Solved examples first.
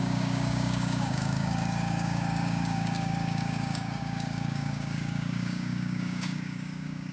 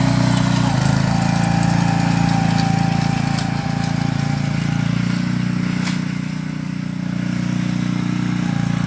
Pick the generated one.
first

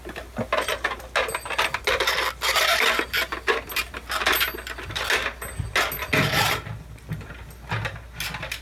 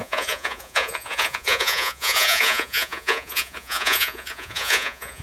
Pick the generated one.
second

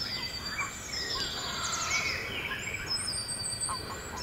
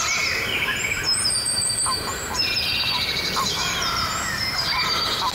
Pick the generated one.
second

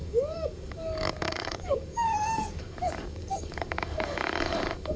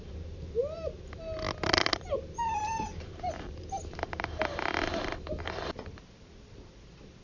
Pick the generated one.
first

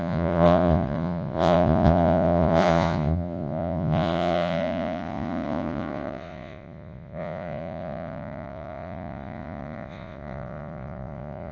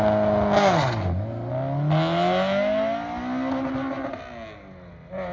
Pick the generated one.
first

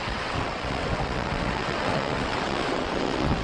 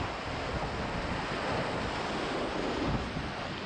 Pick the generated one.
first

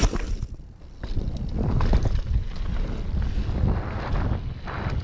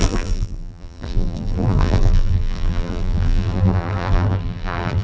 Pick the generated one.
second